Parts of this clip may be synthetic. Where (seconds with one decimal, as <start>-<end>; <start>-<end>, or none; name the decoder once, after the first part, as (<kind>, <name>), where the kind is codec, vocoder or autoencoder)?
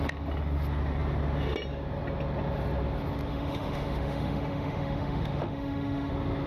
3.3-6.1 (autoencoder, DAC-VAE)